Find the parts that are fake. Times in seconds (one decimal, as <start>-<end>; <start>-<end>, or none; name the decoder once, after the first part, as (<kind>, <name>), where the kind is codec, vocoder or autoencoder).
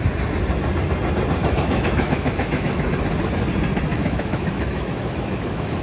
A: 1.4-3.0 (autoencoder, DAC-VAE); 3.9-5.8